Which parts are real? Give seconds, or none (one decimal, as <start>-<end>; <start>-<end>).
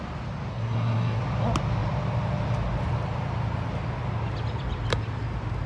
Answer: 0.0-0.5; 1.2-5.7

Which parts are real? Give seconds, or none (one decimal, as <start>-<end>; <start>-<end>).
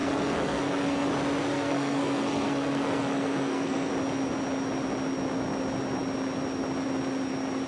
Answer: 1.1-1.5; 3.9-7.7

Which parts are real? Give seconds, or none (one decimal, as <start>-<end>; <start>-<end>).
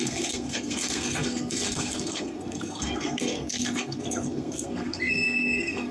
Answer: none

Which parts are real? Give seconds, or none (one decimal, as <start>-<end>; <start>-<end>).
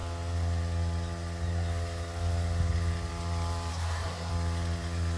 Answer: 0.0-3.7; 4.3-5.2